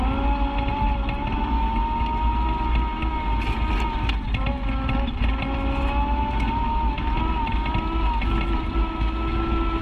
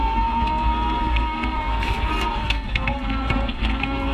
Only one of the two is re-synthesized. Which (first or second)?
second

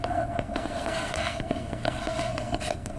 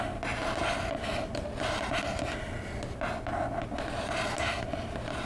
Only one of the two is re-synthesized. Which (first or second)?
first